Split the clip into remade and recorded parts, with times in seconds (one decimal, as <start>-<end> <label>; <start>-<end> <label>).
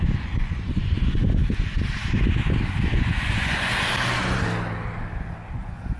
0.0-1.2 remade; 1.2-2.9 recorded; 2.9-3.7 remade; 3.7-5.5 recorded; 5.5-6.0 remade